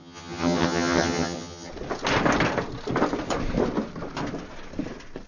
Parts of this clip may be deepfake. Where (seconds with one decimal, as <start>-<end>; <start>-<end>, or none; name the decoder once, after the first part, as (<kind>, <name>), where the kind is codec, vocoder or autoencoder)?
0.0-1.7 (vocoder, HiFi-GAN)